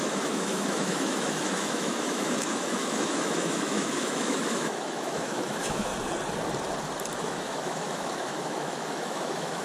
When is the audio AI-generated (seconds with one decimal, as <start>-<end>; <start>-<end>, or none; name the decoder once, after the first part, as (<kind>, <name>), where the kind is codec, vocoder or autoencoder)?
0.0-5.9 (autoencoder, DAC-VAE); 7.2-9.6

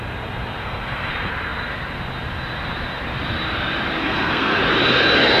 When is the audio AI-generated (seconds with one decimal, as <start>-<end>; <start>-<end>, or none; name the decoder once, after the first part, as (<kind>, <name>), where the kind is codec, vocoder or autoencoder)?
0.6-1.1 (codec, SNAC); 4.0-4.6

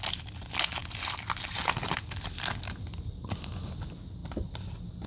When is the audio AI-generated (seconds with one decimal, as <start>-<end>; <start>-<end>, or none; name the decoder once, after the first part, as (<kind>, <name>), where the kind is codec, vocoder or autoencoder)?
none

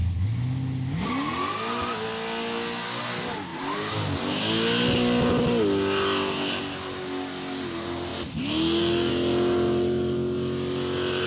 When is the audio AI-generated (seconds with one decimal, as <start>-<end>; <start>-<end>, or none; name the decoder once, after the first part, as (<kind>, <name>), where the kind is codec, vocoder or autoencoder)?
none

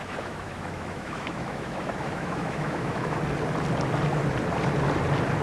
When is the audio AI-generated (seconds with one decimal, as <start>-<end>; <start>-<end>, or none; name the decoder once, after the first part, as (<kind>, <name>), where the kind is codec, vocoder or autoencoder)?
0.0-3.2 (autoencoder, DAC-VAE)

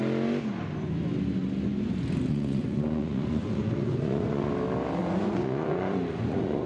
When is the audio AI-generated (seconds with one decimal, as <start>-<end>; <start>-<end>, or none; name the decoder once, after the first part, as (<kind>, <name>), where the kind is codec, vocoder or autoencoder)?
2.3-4.5 (vocoder, Vocos); 5.0-6.7

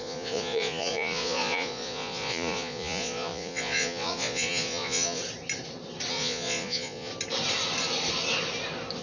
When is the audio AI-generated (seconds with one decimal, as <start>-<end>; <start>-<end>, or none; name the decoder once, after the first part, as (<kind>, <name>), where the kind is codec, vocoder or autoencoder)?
0.0-5.2 (vocoder, Vocos); 6.1-7.1

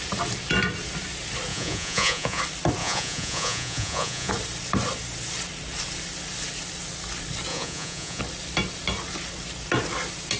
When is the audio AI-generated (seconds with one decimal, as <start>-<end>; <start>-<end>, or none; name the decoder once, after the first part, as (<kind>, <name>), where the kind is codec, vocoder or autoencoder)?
1.5-2.4 (vocoder, Vocos); 2.8-4.3; 7.5-8.2